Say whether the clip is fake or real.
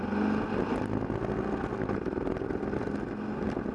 real